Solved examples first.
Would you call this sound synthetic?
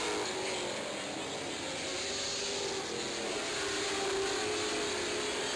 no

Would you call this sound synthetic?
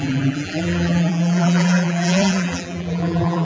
yes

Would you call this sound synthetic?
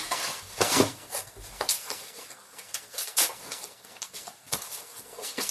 yes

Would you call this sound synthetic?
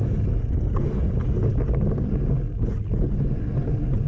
no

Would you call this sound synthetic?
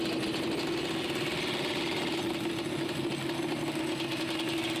no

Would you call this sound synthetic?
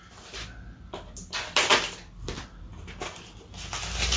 no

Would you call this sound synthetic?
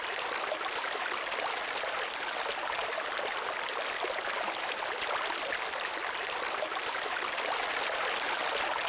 no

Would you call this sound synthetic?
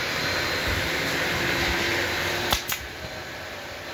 no